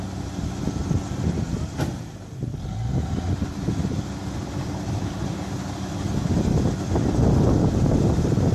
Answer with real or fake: real